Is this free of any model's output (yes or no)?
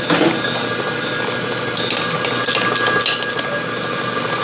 yes